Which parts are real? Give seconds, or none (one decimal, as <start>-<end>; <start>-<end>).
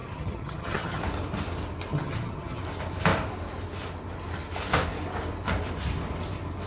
1.0-1.9; 2.6-6.7